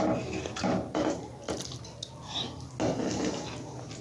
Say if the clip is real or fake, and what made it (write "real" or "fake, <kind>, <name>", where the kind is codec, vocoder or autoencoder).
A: real